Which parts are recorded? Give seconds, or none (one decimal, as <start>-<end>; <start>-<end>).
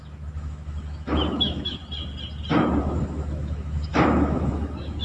1.8-2.8